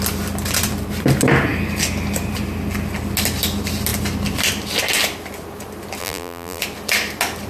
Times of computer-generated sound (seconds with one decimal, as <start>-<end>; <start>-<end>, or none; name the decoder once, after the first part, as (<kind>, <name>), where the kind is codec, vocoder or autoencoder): 6.0-6.6 (vocoder, BigVGAN v2)